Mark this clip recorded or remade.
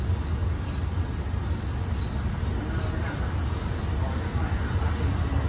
recorded